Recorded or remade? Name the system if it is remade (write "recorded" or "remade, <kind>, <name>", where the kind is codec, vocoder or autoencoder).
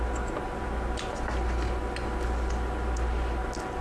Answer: recorded